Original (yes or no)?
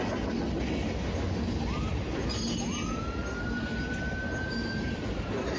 yes